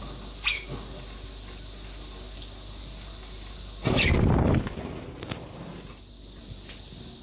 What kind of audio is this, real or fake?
real